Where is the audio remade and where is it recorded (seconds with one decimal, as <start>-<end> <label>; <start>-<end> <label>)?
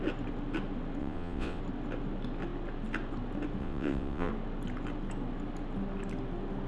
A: 0.0-1.0 recorded; 1.0-1.6 remade; 1.6-3.6 recorded; 3.6-4.3 remade; 4.3-6.7 recorded